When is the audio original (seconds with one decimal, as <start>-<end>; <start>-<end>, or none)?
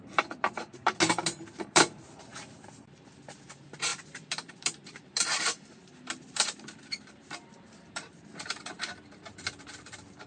0.5-1.7; 2.3-3.5